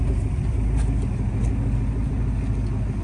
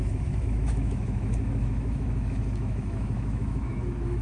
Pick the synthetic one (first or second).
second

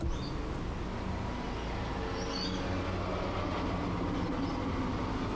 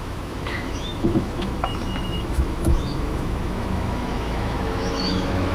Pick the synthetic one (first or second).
second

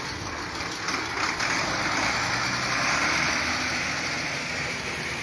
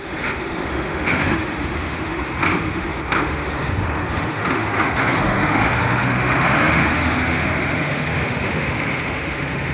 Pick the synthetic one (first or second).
second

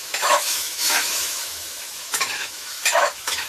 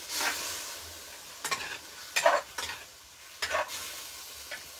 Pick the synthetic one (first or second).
first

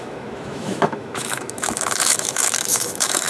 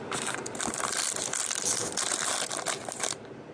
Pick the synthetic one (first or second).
first